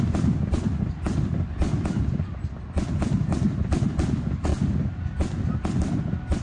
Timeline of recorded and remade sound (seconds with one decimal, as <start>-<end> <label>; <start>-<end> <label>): 0.0-6.4 recorded